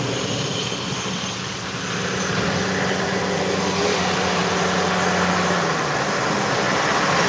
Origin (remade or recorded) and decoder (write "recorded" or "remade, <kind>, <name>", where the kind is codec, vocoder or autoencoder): recorded